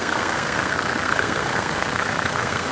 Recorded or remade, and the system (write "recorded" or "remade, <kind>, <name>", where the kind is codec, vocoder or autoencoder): remade, codec, SNAC